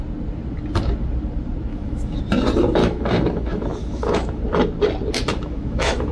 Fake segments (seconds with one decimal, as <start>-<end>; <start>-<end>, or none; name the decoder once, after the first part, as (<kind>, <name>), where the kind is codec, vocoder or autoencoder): 1.7-2.2 (autoencoder, DAC-VAE); 2.8-4.4; 5.3-6.1